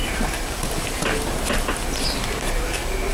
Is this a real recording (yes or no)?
yes